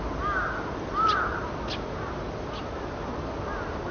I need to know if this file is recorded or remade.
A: recorded